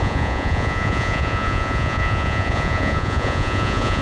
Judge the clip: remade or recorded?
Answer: remade